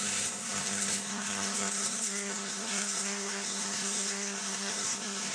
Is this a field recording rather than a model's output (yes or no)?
no